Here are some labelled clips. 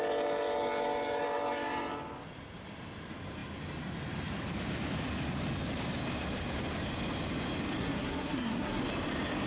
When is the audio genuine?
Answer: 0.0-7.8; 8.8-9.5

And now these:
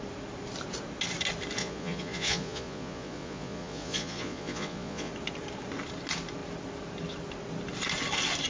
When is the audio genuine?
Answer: 0.0-1.6; 5.1-8.5

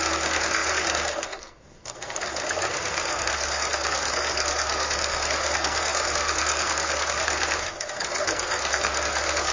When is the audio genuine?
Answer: none

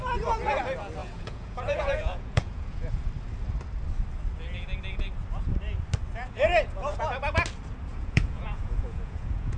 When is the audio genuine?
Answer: 0.0-1.0; 3.1-7.9

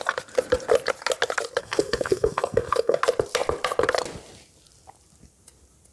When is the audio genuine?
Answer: 0.0-1.6; 3.0-5.9